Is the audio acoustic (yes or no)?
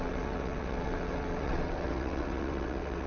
no